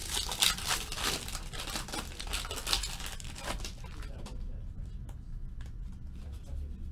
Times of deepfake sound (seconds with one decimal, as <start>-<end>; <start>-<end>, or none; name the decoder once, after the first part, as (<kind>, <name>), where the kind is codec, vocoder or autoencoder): none